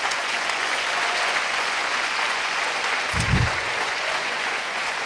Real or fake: fake